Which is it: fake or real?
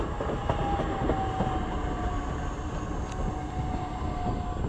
real